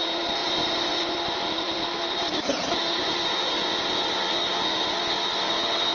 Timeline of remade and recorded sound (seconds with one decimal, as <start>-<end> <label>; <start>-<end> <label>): 0.0-0.4 recorded; 0.4-3.9 remade; 3.9-5.9 recorded